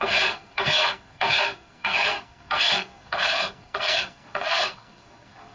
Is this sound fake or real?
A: fake